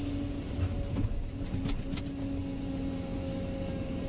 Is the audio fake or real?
real